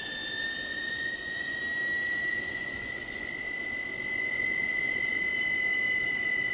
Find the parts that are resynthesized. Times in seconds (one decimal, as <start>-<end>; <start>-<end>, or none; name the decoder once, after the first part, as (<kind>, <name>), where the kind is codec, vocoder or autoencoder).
0.7-1.6 (vocoder, Vocos); 2.3-3.3; 4.1-5.2